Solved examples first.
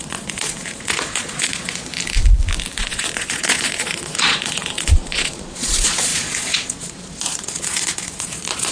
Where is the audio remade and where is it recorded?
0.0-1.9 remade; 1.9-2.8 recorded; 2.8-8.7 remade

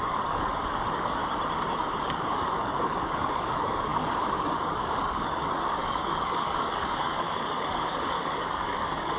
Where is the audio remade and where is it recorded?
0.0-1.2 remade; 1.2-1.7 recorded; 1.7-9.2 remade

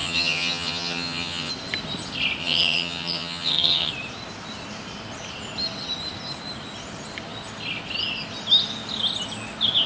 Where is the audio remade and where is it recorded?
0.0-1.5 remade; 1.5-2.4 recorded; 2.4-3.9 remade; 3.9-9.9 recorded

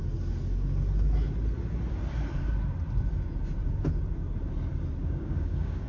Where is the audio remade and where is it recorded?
0.0-5.0 recorded; 5.0-5.9 remade

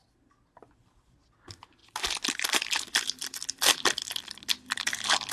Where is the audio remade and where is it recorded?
0.0-5.3 recorded

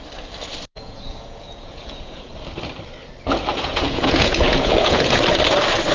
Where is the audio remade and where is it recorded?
0.0-0.7 recorded; 0.7-2.3 remade; 2.3-3.5 recorded; 3.5-5.2 remade; 5.2-5.9 recorded